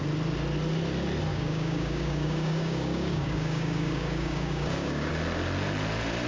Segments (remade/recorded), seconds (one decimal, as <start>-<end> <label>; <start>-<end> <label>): 0.0-1.3 recorded; 1.3-5.1 remade; 5.1-6.3 recorded